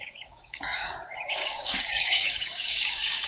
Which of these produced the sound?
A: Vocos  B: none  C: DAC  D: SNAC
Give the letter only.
C